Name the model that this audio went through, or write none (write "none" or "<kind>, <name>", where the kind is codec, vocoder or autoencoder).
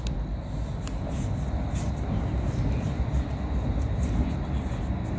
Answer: none